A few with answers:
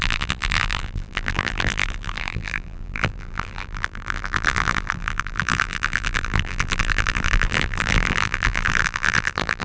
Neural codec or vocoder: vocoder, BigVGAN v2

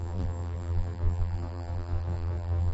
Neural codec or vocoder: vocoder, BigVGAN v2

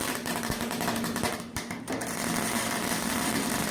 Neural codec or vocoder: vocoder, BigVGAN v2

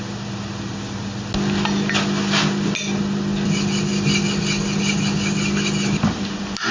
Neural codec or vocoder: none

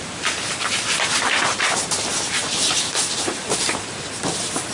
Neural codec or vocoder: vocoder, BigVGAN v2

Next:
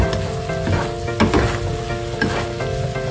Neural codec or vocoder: none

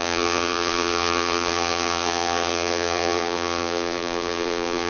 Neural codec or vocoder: vocoder, BigVGAN v2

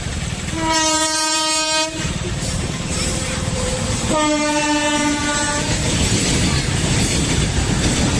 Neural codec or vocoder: vocoder, BigVGAN v2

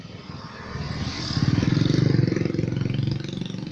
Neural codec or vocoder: vocoder, BigVGAN v2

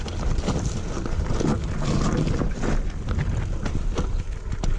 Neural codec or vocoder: none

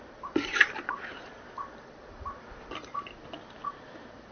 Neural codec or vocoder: vocoder, BigVGAN v2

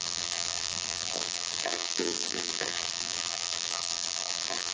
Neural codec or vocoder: vocoder, BigVGAN v2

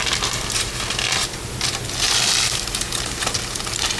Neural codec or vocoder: none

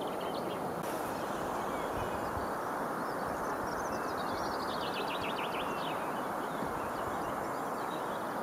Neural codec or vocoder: none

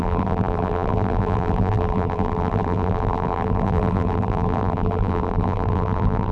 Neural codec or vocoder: vocoder, BigVGAN v2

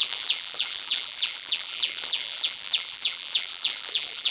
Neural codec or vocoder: vocoder, BigVGAN v2